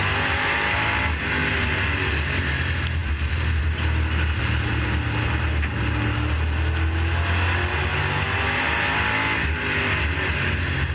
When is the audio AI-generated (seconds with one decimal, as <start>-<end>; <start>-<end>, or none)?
none